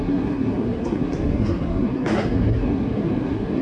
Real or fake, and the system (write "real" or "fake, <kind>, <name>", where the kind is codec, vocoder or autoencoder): fake, codec, SNAC